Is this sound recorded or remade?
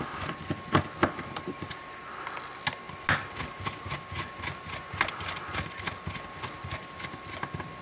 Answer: recorded